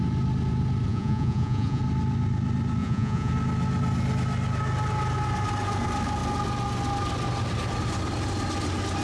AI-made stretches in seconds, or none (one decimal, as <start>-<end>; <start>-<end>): 0.9-1.8; 2.8-3.3